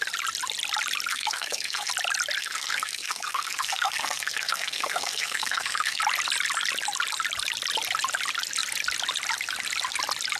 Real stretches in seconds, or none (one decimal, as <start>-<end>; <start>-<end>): 0.0-1.1; 1.9-2.4; 6.0-10.4